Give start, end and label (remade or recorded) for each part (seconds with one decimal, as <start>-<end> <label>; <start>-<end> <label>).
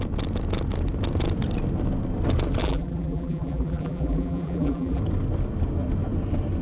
0.0-2.6 recorded; 2.6-5.0 remade; 5.0-6.6 recorded